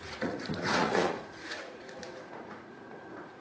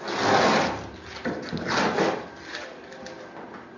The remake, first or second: first